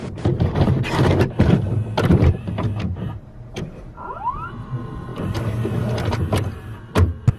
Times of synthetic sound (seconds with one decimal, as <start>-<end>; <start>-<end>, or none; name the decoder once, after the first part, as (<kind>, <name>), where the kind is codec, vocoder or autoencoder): 0.0-1.7 (vocoder, BigVGAN v2); 2.1-4.3; 5.1-5.7